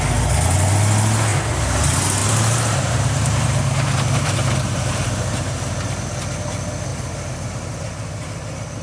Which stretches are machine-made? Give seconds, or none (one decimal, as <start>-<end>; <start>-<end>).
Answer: 2.2-5.7; 6.9-7.5